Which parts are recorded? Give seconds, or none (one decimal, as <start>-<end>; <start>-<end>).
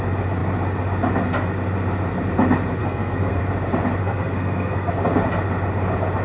0.0-2.8; 3.4-4.0; 4.9-6.2